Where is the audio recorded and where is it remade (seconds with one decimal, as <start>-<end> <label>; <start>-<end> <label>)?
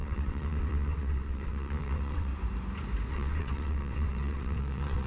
0.0-2.3 remade; 2.3-3.1 recorded; 3.1-5.1 remade